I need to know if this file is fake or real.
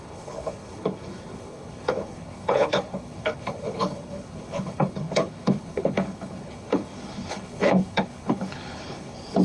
fake